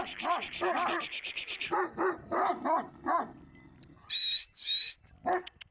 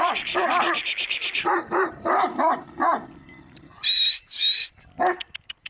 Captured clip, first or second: first